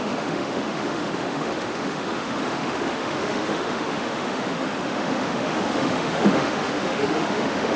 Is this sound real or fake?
fake